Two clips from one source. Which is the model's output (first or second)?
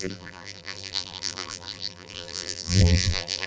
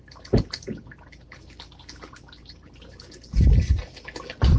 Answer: first